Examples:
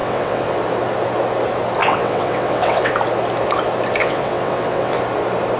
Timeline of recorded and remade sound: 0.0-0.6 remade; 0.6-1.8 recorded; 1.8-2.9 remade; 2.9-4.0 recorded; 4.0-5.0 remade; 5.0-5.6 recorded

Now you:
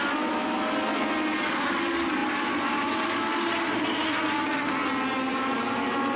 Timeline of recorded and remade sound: 0.0-6.2 recorded

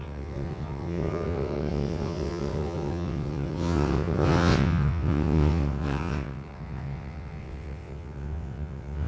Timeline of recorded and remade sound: 0.0-9.1 remade

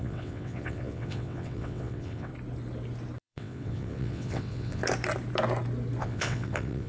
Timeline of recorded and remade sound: 0.0-2.3 remade; 2.3-3.2 recorded; 3.2-4.8 remade; 4.8-6.0 recorded; 6.0-6.9 remade